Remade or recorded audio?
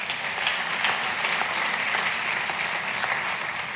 recorded